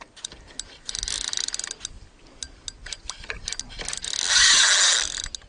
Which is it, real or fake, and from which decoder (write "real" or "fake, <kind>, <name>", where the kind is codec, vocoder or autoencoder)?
real